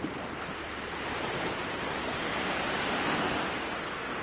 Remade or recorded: recorded